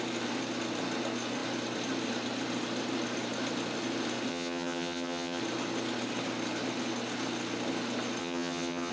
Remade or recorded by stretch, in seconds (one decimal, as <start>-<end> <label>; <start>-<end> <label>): 0.0-4.3 recorded; 4.3-5.4 remade; 5.4-8.2 recorded; 8.2-8.9 remade